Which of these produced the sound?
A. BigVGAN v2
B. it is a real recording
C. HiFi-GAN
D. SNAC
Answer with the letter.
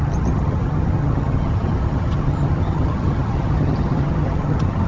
C